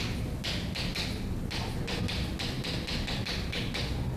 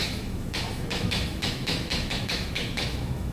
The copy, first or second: second